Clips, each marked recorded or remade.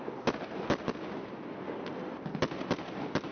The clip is recorded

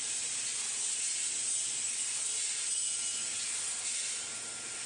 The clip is recorded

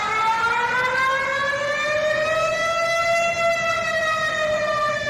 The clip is recorded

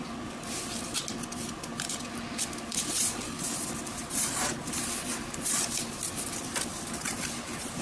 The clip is recorded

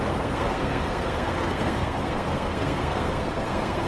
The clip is remade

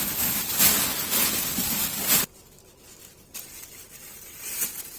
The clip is remade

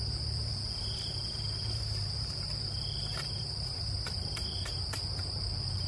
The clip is remade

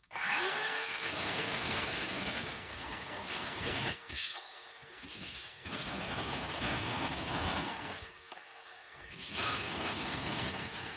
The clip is remade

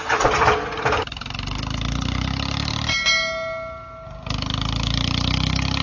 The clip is recorded